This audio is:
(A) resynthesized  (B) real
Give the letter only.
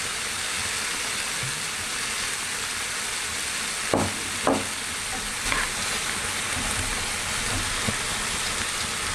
B